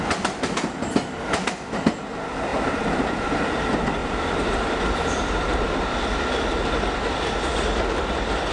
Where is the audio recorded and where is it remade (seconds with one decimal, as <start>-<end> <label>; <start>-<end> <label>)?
0.0-2.5 recorded; 2.5-3.4 remade; 3.4-4.0 recorded; 4.0-5.2 remade; 5.2-8.5 recorded